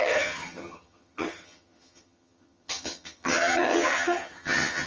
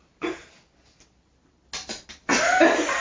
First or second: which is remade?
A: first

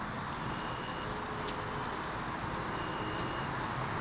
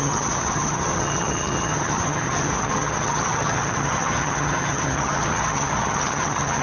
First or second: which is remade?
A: second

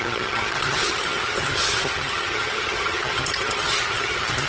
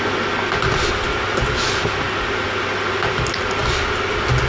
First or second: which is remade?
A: first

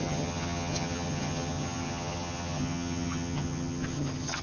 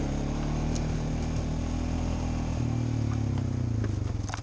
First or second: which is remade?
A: first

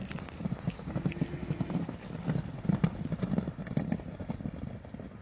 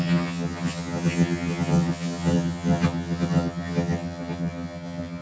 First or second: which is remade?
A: second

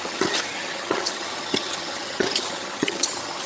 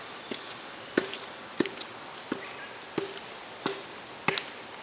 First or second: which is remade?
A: first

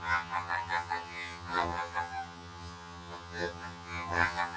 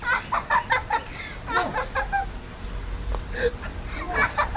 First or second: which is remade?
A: first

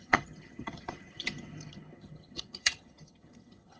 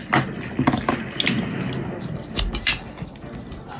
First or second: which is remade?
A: first